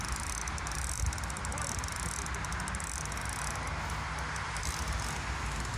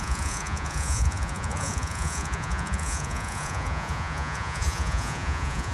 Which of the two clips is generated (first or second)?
second